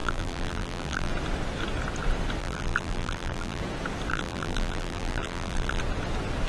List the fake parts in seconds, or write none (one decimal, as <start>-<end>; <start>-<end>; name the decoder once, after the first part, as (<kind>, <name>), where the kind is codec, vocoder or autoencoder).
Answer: 0.0-1.1 (vocoder, BigVGAN v2); 2.4-3.6; 4.1-5.8